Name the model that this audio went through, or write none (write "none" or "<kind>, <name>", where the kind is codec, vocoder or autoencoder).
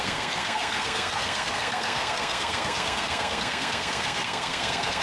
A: codec, SNAC